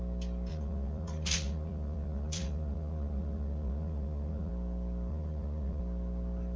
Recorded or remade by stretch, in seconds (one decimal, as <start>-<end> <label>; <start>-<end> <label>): 0.0-0.5 recorded; 0.5-4.5 remade; 4.5-5.1 recorded; 5.1-5.8 remade; 5.8-6.6 recorded